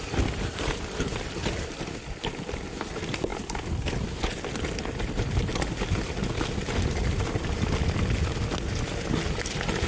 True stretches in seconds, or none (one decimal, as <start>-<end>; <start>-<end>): 0.0-1.1; 1.7-3.3; 3.9-9.9